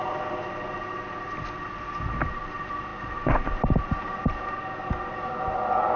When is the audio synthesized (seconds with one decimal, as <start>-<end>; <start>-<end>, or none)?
none

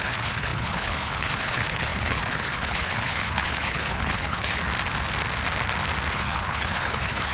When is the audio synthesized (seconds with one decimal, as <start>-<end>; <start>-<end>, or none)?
0.0-4.6; 6.1-7.3

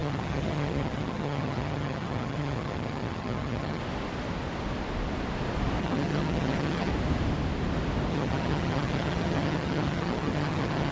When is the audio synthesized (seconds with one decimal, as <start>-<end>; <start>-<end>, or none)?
0.0-3.8; 5.8-6.9; 8.1-10.9